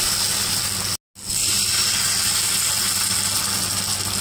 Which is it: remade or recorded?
recorded